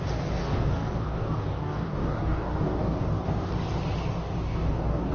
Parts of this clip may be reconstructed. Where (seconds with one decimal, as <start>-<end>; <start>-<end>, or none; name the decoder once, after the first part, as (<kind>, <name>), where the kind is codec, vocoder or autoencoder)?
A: 0.4-3.5 (codec, DAC); 4.1-5.1